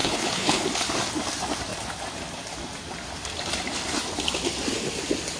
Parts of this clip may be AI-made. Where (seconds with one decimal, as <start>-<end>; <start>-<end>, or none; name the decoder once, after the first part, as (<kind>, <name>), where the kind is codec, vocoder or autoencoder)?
0.0-0.6 (codec, HILCodec)